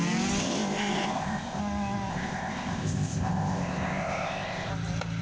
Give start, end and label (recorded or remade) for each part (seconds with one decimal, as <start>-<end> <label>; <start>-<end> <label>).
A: 0.0-0.4 recorded; 0.4-1.6 remade; 1.6-2.1 recorded; 2.1-4.7 remade; 4.7-5.2 recorded